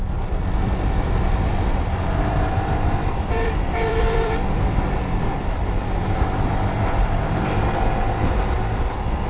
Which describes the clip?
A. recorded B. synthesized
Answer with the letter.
B